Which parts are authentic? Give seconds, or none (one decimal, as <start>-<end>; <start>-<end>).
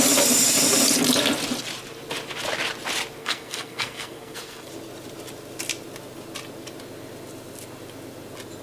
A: 0.0-3.2; 4.7-8.6